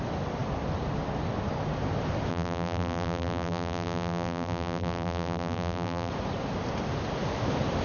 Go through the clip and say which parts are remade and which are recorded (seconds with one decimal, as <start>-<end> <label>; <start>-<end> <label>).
0.0-2.3 recorded; 2.3-6.1 remade; 6.1-7.8 recorded